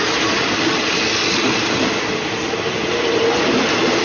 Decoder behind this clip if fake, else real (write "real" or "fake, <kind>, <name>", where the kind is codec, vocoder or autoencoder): real